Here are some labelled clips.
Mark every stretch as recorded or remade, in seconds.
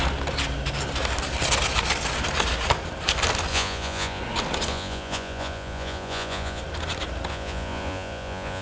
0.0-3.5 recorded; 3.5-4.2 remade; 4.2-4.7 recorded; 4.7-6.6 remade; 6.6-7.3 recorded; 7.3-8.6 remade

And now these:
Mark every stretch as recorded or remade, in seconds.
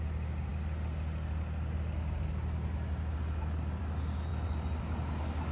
0.0-5.5 recorded